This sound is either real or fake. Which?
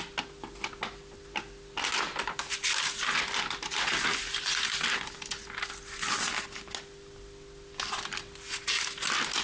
real